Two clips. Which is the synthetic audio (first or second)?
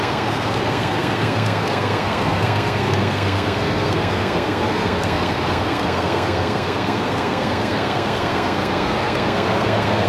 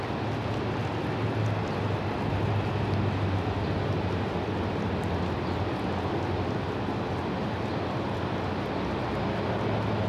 first